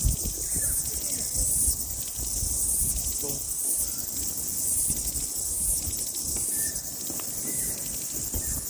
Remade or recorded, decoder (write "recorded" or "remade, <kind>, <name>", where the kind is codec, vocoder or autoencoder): recorded